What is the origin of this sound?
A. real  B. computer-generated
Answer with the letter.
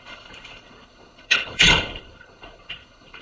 B